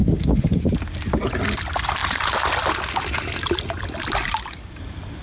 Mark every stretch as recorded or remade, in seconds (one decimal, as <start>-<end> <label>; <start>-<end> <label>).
0.0-0.6 remade; 0.6-5.2 recorded